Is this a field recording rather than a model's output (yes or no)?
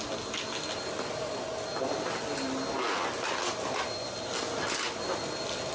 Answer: yes